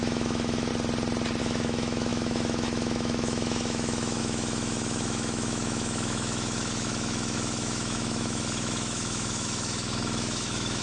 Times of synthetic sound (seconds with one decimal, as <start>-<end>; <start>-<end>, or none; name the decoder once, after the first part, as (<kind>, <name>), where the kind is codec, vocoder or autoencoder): 0.0-0.7 (autoencoder, DAC-VAE); 1.4-10.8